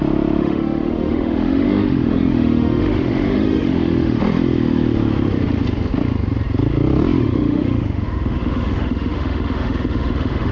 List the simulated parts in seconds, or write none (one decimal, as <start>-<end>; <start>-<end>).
0.4-4.2; 7.2-10.5